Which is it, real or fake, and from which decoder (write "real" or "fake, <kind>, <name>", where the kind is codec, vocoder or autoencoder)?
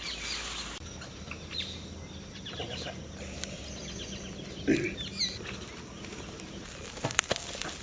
real